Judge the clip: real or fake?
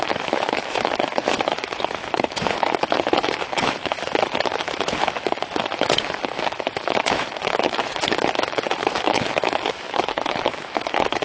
fake